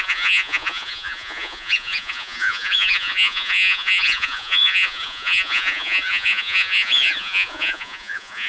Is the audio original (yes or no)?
no